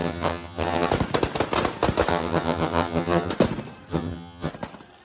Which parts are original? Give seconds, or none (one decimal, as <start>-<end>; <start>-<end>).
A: 0.9-2.1; 3.3-3.9; 4.5-5.0